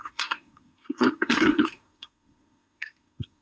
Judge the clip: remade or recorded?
remade